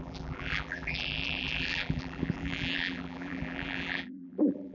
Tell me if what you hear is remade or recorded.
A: remade